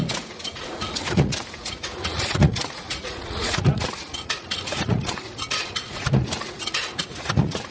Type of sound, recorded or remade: remade